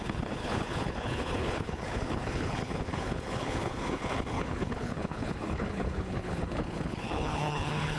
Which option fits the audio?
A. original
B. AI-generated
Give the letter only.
B